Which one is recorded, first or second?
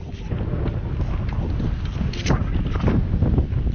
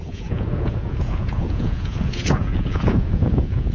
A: first